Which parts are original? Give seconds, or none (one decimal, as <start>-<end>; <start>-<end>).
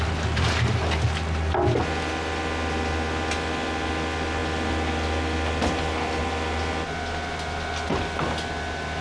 0.0-9.0